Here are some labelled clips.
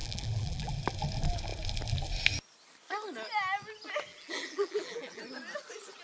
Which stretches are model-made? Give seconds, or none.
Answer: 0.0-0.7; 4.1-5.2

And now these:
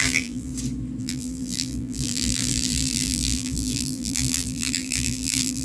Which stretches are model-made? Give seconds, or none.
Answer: 0.0-0.5; 1.0-5.6

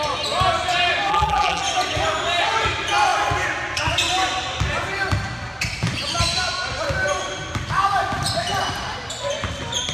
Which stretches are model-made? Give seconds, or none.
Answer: 1.1-1.6